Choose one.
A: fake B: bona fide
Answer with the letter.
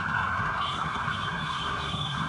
A